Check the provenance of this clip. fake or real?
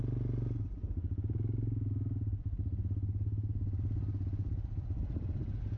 real